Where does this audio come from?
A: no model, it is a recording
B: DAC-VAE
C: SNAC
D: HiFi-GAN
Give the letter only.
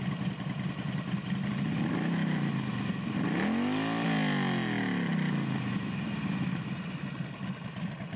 A